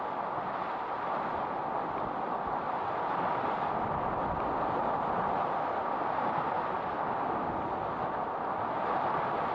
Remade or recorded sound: recorded